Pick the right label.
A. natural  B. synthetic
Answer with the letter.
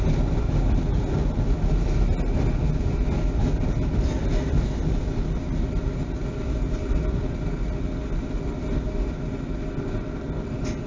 A